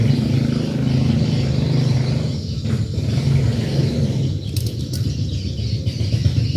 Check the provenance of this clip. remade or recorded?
recorded